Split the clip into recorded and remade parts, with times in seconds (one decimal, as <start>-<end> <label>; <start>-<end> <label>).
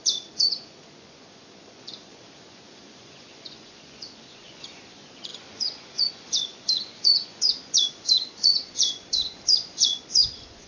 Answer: 0.0-10.7 remade